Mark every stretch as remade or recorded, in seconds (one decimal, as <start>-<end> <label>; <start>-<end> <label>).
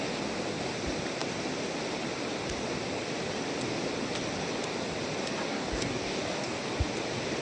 0.0-5.5 recorded; 5.5-6.6 remade; 6.6-7.4 recorded